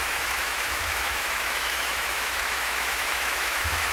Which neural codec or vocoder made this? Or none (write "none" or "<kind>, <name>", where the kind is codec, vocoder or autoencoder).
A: autoencoder, DAC-VAE